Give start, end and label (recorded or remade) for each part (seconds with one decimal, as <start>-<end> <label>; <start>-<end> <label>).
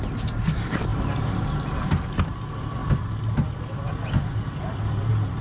0.0-5.4 recorded